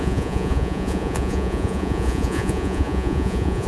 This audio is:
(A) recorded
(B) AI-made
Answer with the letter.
B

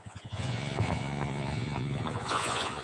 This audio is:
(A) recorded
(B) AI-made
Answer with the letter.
B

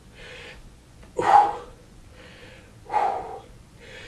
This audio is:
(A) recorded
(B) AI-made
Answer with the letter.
B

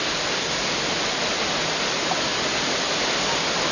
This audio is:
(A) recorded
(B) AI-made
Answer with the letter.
A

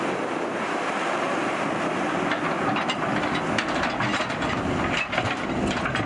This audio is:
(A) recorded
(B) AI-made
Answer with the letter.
A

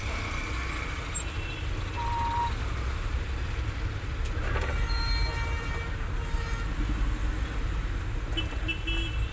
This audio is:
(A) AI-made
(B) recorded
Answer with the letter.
B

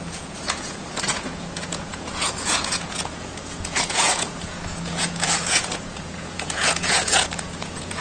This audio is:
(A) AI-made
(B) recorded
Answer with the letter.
A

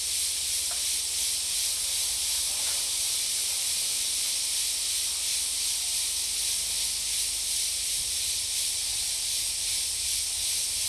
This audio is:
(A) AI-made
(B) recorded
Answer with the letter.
B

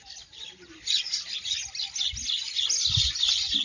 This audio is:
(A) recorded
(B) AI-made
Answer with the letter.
A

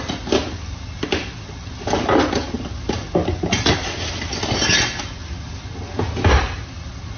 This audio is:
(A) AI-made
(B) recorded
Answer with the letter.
B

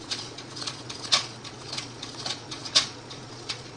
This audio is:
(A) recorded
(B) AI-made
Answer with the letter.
B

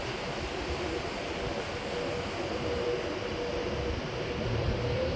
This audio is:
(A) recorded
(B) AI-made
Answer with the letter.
A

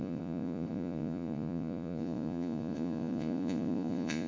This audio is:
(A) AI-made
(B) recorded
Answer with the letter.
A